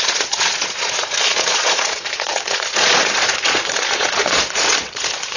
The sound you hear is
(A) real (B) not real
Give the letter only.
B